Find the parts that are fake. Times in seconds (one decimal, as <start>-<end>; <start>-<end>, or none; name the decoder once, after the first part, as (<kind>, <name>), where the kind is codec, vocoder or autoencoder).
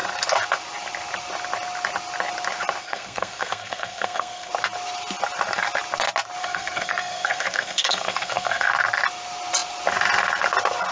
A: 2.8-4.5 (codec, SNAC); 6.4-8.7